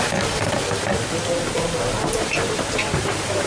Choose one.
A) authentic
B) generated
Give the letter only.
A